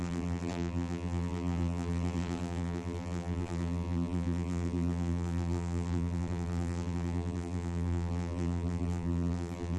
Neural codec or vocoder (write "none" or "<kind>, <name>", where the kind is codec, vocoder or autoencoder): vocoder, BigVGAN v2